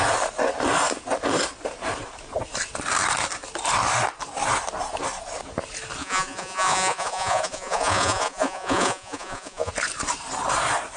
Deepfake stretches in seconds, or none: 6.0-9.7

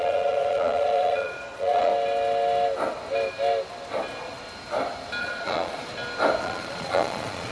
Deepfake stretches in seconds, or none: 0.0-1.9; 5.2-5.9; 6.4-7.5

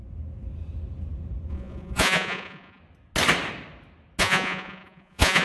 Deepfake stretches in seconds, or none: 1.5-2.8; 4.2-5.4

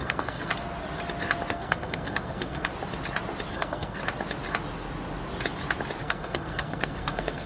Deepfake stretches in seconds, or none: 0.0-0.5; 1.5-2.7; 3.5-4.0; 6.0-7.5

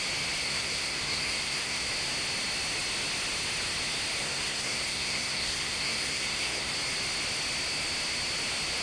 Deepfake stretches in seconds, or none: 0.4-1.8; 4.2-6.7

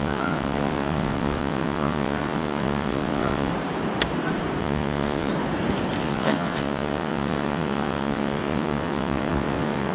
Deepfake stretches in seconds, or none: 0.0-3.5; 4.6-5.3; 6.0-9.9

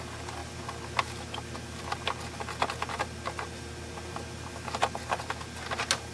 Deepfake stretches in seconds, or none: none